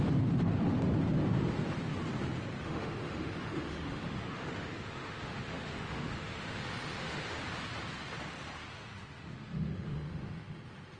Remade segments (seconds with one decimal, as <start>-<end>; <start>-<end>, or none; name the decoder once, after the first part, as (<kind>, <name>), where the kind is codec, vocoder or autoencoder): 2.6-7.4 (autoencoder, DAC-VAE); 8.7-11.0